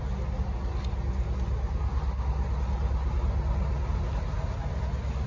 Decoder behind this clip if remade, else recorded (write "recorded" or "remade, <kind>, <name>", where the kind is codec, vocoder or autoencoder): recorded